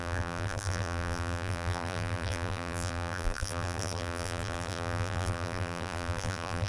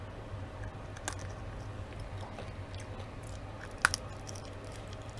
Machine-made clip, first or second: first